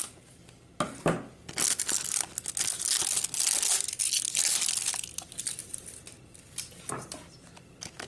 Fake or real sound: real